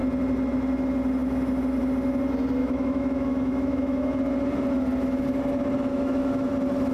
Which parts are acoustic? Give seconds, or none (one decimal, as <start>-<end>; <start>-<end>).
0.0-2.6; 4.2-5.9; 6.5-6.9